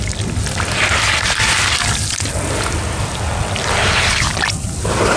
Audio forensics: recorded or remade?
recorded